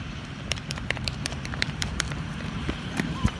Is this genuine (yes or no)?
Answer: no